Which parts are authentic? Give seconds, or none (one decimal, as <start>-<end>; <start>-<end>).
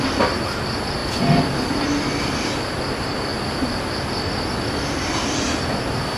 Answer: 0.0-6.2